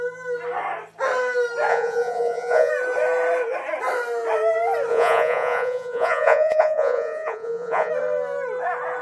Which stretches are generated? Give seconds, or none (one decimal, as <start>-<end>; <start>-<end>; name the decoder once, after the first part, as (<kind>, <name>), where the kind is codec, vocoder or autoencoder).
1.7-2.7 (vocoder, Vocos); 4.9-7.9